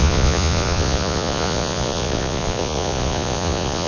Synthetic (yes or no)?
yes